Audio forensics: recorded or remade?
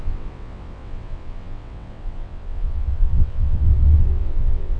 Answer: remade